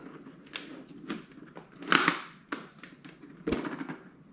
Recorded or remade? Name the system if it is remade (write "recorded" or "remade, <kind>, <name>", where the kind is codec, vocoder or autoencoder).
recorded